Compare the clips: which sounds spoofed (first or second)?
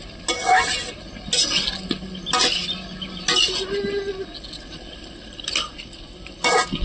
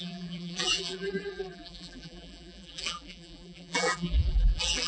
second